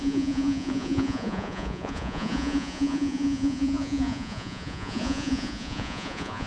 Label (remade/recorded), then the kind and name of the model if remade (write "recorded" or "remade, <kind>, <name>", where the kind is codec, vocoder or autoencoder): remade, vocoder, Vocos